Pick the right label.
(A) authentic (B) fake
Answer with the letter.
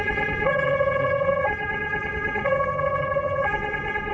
B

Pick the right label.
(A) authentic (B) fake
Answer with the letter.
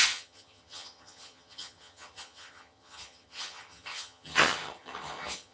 B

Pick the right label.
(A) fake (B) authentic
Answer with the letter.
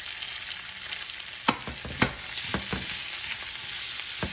B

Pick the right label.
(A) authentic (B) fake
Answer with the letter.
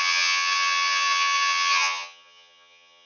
B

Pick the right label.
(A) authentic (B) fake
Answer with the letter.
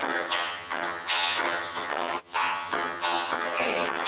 B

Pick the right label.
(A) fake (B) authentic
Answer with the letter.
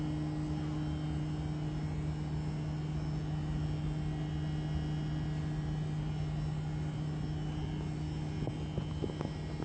B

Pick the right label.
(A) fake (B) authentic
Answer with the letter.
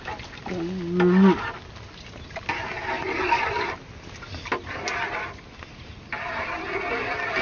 B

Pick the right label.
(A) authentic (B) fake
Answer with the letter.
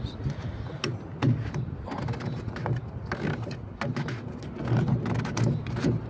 A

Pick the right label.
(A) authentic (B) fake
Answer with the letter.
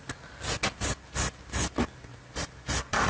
A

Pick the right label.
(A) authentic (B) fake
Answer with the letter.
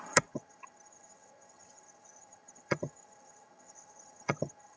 B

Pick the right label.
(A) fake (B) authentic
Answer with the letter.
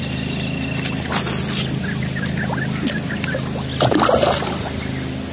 B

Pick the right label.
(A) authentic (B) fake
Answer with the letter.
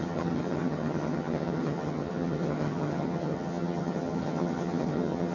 B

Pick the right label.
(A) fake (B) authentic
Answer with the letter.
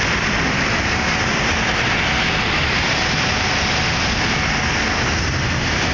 B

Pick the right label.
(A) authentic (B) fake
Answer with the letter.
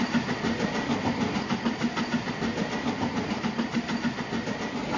A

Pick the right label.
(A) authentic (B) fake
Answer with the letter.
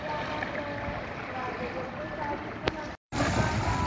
A